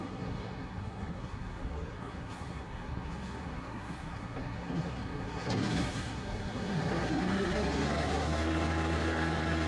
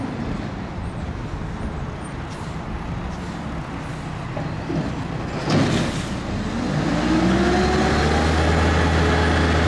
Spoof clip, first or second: first